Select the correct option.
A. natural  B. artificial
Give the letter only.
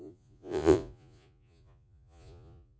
B